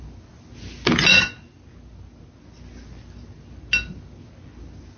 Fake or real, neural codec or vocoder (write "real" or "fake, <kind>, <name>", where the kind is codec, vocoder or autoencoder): real